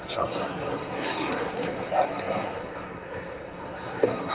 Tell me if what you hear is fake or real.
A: fake